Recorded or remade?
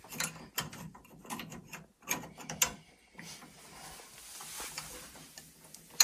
recorded